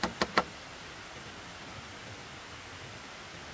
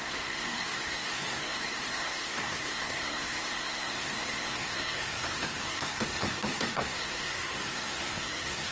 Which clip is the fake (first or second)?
second